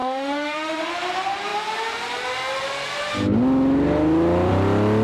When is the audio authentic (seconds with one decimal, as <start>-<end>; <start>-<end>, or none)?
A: 0.9-5.0